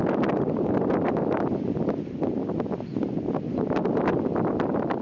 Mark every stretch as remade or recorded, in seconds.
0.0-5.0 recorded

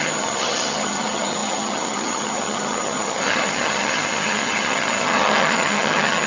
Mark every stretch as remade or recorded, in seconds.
0.0-6.3 remade